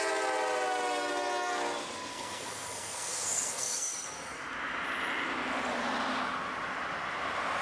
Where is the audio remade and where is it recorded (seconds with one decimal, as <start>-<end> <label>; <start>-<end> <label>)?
0.0-2.1 recorded; 2.1-4.4 remade; 4.4-7.6 recorded